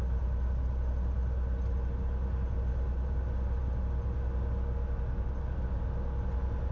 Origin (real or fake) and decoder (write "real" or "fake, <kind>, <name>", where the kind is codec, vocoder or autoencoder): real